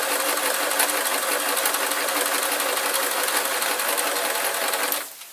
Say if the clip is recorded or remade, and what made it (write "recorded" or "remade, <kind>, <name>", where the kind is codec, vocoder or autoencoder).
recorded